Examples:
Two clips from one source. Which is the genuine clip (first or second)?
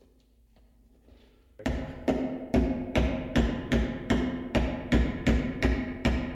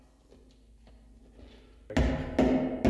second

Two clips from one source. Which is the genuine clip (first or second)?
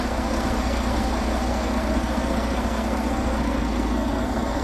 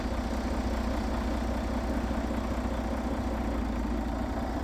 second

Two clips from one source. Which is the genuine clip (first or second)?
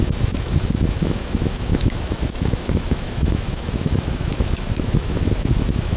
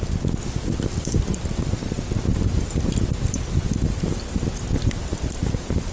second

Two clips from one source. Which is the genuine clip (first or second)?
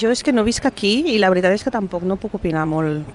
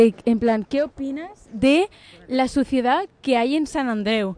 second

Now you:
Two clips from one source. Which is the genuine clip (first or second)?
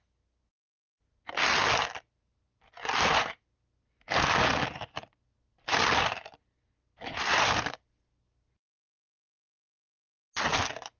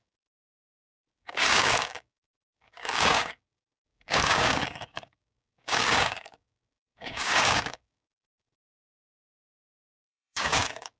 first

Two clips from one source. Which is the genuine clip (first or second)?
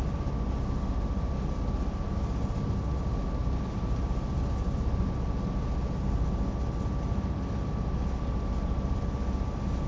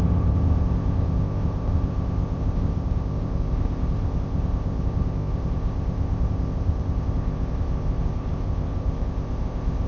first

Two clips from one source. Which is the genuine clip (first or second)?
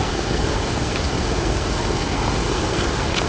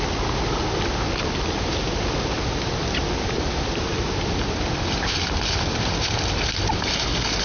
second